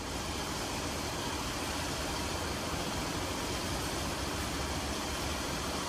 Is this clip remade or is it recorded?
remade